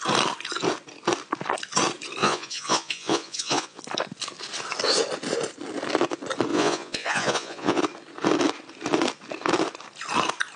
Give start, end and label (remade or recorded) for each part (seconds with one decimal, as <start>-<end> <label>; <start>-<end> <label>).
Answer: 0.0-2.2 recorded; 2.2-3.8 remade; 3.8-6.5 recorded; 6.5-7.8 remade; 7.8-10.6 recorded